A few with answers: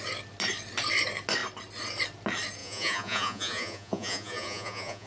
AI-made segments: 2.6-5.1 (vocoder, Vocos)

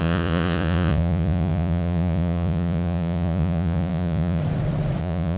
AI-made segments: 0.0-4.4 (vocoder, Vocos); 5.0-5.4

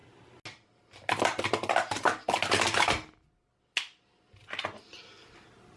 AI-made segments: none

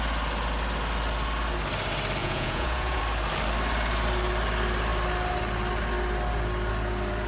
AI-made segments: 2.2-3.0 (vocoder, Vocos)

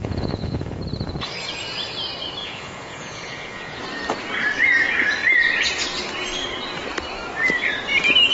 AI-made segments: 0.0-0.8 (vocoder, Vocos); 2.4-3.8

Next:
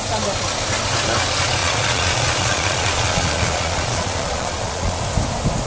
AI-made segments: 1.6-5.0 (vocoder, Vocos)